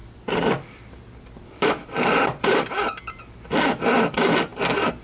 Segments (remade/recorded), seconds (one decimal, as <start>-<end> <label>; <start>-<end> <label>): 0.0-3.0 remade; 3.0-4.5 recorded; 4.5-5.0 remade